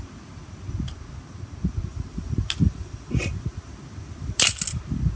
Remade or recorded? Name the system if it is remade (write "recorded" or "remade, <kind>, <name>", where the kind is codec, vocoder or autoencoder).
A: recorded